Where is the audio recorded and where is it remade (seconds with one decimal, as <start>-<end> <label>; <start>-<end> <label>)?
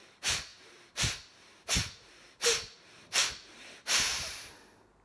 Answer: 0.0-5.0 remade